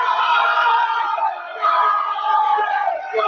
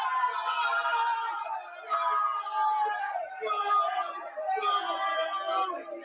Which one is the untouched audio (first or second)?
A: second